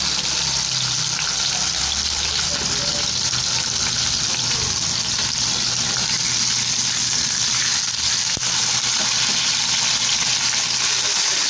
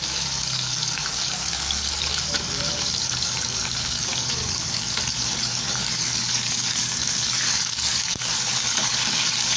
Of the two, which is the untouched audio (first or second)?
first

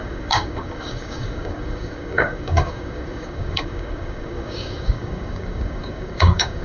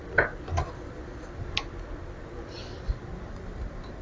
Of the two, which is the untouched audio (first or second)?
second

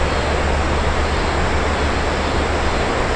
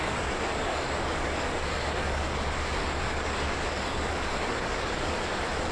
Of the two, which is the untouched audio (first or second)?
first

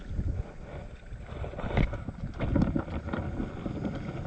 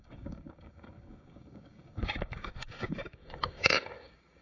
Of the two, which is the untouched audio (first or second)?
first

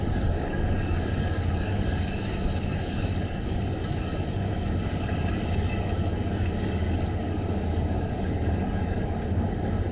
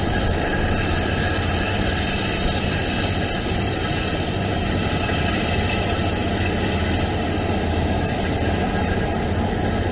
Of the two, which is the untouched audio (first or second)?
second